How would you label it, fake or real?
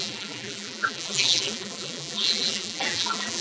fake